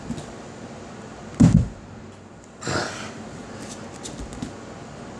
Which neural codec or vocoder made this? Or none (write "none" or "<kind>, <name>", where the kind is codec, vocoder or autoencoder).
none